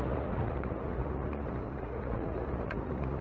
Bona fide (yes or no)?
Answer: no